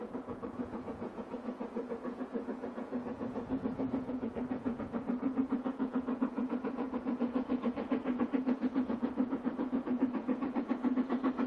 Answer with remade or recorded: remade